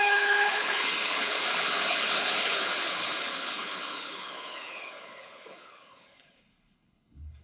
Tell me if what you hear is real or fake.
fake